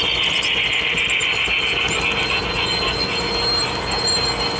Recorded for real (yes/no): yes